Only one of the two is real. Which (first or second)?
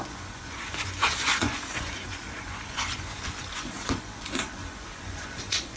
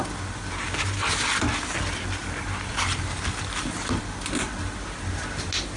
second